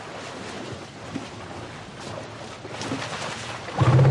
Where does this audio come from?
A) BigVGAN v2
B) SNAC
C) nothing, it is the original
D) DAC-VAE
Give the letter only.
C